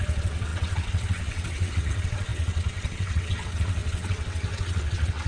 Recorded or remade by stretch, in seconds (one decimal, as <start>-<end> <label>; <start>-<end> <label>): 0.0-5.3 remade